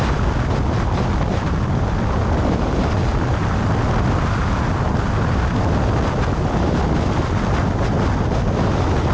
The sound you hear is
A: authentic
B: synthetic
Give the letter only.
A